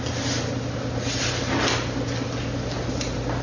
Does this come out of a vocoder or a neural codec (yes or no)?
no